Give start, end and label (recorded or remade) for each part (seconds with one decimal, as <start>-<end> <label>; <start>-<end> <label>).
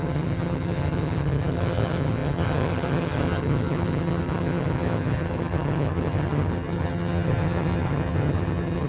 0.0-8.9 remade